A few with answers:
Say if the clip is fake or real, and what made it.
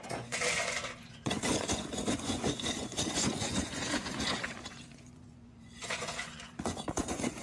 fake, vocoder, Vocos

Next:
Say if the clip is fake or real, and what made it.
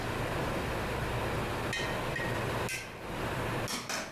real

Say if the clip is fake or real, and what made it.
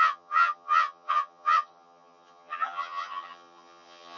fake, vocoder, HiFi-GAN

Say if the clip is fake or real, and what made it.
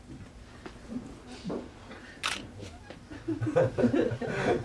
real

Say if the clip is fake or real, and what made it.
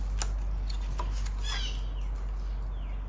real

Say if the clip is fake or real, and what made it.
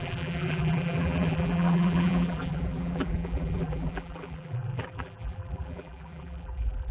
fake, vocoder, BigVGAN v2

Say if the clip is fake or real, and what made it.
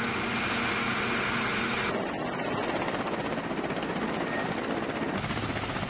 real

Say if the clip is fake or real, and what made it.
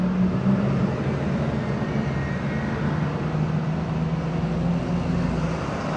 real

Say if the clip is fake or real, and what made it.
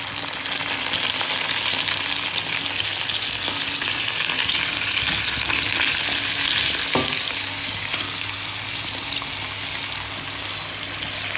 real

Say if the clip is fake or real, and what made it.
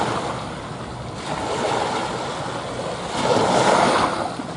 real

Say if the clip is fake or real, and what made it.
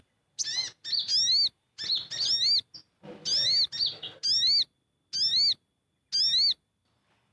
real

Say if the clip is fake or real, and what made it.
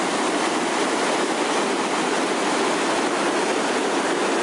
real